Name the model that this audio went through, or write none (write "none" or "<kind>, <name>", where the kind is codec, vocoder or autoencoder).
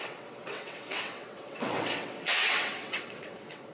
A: vocoder, WaveNeXt